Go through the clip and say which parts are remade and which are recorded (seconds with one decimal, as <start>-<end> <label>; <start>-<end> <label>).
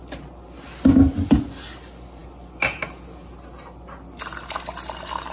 0.0-5.3 recorded